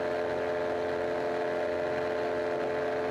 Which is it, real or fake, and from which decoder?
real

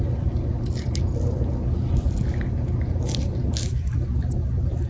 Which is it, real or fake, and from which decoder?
real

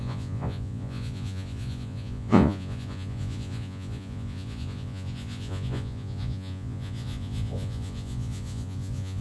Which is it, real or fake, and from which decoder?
fake, vocoder, Vocos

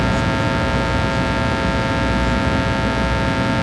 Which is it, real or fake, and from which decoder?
real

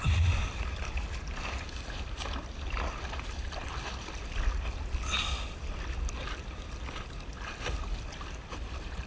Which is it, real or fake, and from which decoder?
real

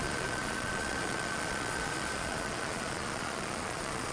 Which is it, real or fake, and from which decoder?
fake, vocoder, Vocos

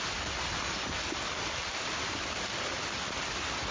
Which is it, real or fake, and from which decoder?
real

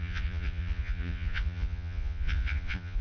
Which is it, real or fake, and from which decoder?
fake, vocoder, Vocos